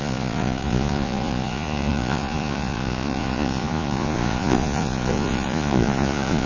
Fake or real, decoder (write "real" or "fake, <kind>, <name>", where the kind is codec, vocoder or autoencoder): fake, vocoder, Vocos